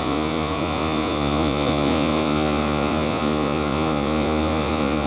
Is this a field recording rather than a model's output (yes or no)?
no